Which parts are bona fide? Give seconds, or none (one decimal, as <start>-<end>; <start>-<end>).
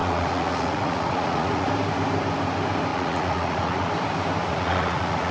1.7-2.9; 3.9-4.5